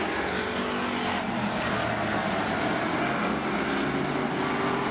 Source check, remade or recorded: recorded